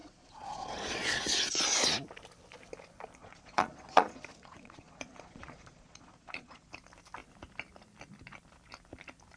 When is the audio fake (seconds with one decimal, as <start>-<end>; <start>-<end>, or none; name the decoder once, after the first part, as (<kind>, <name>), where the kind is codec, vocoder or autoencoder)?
0.0-1.5 (vocoder, Vocos); 3.2-6.7

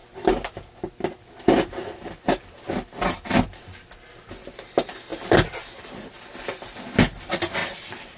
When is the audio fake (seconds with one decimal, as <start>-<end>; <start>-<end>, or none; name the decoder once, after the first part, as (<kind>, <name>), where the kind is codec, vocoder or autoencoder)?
5.1-6.2 (vocoder, BigVGAN v2); 7.6-8.2

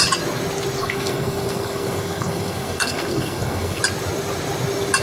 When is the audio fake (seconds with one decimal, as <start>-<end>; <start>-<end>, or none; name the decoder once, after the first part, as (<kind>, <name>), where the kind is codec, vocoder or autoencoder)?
0.8-3.8 (codec, SNAC)

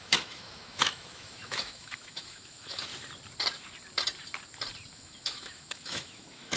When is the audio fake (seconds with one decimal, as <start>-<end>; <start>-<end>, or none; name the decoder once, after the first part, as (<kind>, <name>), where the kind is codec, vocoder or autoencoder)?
0.0-2.9 (autoencoder, DAC-VAE); 4.9-6.6